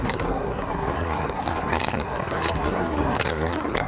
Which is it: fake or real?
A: fake